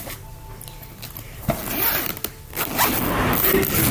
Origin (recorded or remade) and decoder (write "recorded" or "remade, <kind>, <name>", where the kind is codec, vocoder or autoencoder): recorded